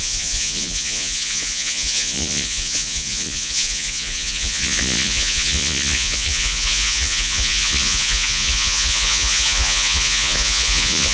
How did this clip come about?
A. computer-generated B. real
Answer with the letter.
A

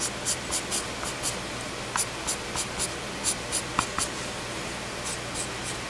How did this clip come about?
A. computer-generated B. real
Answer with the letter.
B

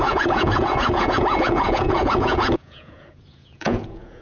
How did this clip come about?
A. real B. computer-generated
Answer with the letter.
B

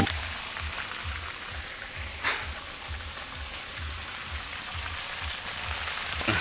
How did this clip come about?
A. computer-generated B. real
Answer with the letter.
B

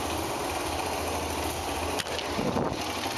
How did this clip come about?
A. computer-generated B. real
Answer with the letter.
B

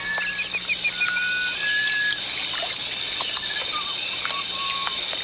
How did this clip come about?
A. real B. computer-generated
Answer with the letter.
A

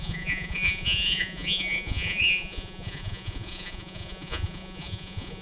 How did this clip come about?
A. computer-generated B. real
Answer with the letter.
A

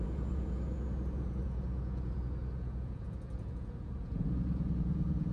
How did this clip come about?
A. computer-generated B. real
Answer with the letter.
A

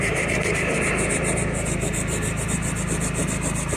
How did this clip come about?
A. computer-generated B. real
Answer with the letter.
B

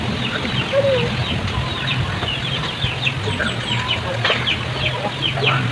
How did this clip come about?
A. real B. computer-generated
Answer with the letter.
A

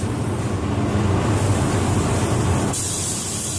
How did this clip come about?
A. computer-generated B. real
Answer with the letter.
B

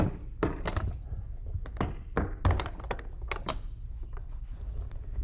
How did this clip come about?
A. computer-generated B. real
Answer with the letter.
B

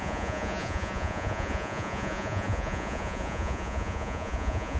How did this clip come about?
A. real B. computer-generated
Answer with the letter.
B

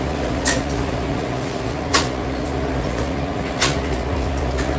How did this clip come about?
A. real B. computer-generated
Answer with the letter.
B